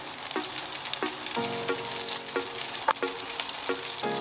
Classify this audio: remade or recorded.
recorded